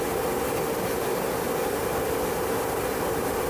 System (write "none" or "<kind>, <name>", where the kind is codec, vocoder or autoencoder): none